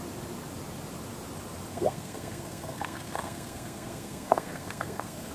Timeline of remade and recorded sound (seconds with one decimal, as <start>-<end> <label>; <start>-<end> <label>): 0.0-1.7 recorded; 1.7-5.3 remade